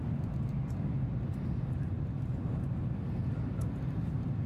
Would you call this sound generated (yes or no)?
no